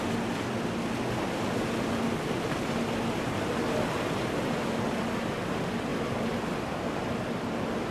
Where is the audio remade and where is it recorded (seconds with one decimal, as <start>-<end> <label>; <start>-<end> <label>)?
0.0-7.9 recorded